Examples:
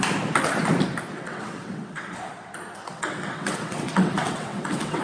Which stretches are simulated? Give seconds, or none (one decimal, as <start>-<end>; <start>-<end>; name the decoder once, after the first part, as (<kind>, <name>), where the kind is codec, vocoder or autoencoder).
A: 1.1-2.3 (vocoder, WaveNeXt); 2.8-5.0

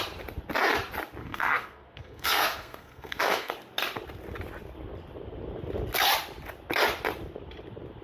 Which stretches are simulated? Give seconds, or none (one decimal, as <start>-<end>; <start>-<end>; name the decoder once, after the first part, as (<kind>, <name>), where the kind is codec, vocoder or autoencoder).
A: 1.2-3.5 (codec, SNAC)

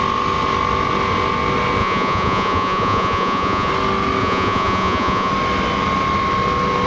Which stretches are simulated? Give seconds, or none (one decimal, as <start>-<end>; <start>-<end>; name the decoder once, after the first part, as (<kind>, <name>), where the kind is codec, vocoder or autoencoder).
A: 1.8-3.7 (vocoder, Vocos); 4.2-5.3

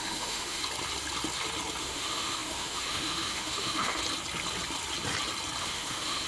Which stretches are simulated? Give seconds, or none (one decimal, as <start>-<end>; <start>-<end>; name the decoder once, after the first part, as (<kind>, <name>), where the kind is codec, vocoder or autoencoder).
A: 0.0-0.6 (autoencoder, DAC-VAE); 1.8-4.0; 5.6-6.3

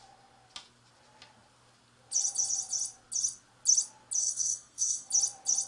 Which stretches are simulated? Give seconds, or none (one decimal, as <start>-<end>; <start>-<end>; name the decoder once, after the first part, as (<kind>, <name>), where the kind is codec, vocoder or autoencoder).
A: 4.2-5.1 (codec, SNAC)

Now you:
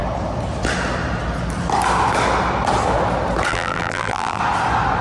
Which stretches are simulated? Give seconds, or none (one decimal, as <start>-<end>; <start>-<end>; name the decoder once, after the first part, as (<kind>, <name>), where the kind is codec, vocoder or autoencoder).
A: 3.5-4.4 (vocoder, BigVGAN v2)

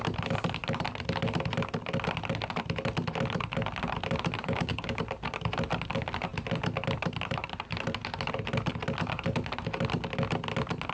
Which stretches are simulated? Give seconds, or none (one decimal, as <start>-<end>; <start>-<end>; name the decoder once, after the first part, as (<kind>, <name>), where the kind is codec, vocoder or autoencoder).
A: 4.4-5.0 (codec, DAC)